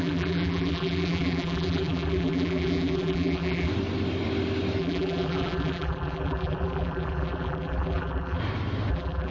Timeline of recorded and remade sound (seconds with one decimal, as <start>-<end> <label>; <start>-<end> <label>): 0.0-3.7 remade; 3.7-4.8 recorded; 4.8-8.4 remade; 8.4-8.9 recorded; 8.9-9.3 remade